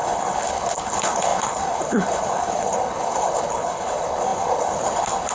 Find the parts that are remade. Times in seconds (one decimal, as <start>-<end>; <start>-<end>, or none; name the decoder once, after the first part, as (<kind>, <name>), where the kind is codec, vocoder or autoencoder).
0.0-5.3 (codec, HILCodec)